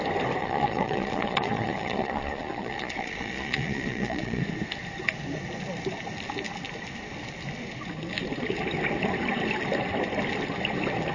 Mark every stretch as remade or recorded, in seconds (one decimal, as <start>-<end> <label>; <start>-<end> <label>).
0.0-0.4 recorded; 0.4-4.4 remade; 4.4-11.1 recorded